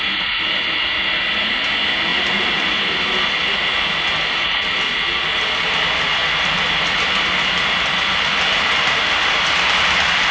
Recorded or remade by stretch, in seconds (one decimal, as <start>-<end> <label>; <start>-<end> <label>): 0.0-10.3 recorded